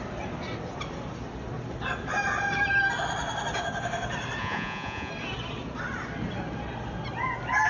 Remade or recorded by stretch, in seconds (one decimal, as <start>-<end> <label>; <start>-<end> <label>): 0.0-4.4 recorded; 4.4-5.1 remade; 5.1-7.7 recorded